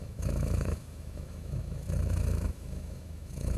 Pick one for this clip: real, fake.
fake